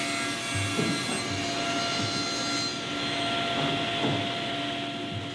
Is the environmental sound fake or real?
real